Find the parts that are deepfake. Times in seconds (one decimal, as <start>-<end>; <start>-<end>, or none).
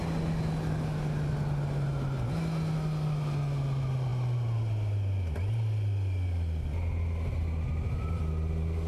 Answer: none